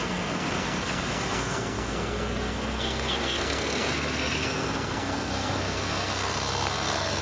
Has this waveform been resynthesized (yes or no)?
yes